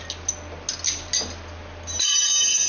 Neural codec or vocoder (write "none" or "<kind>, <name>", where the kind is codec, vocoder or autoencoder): none